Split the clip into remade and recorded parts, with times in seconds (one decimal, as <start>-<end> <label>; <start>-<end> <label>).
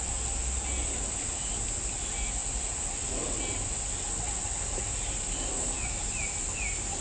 0.0-7.0 recorded